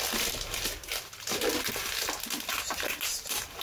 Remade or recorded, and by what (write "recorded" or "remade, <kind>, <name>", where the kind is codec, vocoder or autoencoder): recorded